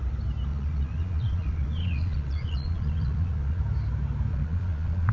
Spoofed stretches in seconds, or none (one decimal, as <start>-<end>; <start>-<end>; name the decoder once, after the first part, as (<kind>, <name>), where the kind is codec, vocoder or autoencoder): 0.5-3.6 (vocoder, Vocos); 4.3-5.1